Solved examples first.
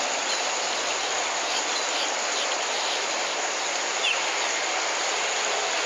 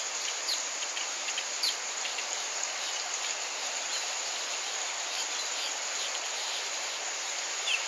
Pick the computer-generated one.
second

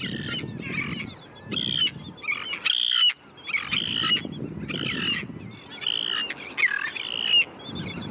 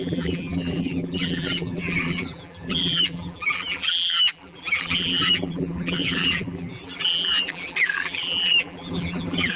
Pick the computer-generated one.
second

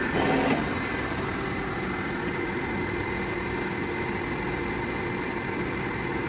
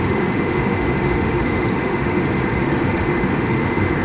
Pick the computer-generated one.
second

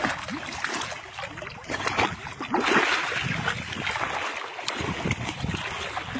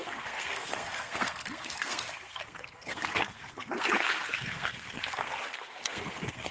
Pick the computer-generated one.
second